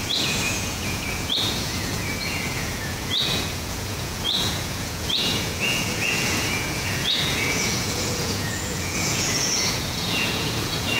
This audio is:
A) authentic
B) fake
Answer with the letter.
B